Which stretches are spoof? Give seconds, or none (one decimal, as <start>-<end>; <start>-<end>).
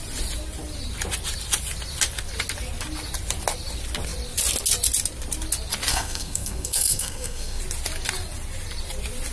5.9-7.6